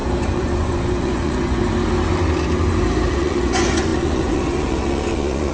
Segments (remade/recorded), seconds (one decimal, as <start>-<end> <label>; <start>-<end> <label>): 0.0-1.6 remade; 1.6-3.1 recorded; 3.1-5.5 remade